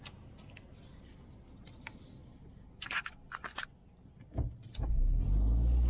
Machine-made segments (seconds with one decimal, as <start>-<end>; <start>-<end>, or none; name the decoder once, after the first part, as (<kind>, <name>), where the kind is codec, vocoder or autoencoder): none